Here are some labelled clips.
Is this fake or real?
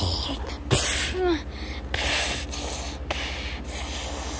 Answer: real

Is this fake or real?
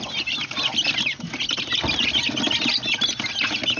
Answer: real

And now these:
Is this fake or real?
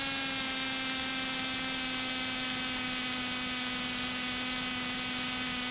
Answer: real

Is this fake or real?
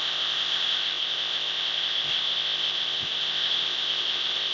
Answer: fake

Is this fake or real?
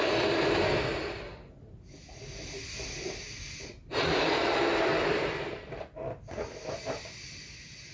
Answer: real